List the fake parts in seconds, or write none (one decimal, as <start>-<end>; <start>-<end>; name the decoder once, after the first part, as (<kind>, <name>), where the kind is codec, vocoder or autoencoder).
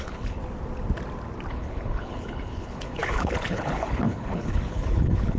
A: 0.0-0.4 (codec, HILCodec); 1.5-5.4